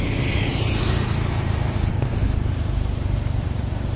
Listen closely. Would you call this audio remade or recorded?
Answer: remade